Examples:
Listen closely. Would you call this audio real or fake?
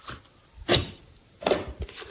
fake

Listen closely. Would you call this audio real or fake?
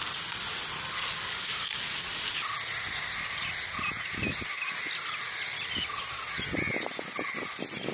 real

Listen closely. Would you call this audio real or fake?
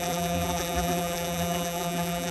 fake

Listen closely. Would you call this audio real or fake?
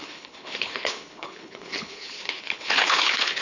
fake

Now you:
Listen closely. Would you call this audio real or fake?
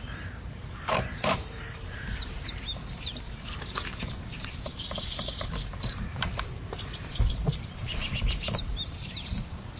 fake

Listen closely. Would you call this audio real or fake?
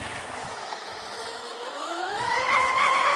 fake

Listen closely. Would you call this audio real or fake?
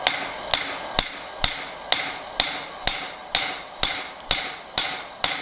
real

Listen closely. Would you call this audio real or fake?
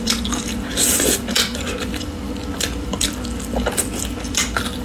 fake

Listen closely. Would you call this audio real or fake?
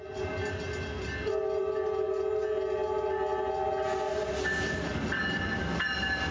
real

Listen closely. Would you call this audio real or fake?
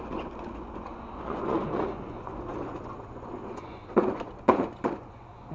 fake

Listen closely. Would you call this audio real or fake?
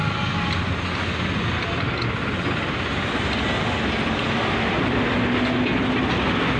real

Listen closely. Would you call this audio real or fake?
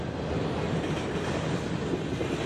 real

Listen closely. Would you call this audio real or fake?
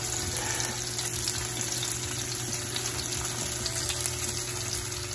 real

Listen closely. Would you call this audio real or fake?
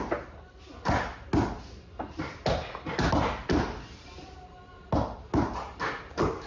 real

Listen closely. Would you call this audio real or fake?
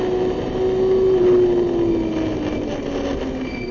real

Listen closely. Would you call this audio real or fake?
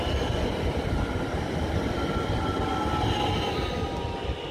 real